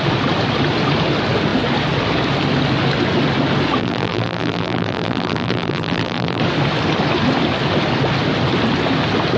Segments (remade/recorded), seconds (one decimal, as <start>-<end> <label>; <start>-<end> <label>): 0.0-3.8 recorded; 3.8-6.4 remade; 6.4-9.4 recorded